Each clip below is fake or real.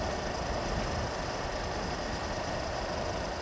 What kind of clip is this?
real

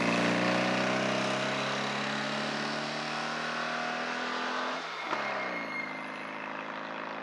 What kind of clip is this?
real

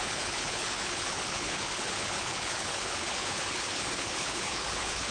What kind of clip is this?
fake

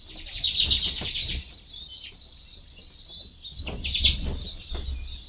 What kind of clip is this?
real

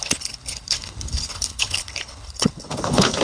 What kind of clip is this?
fake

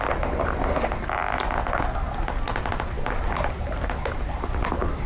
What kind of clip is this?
real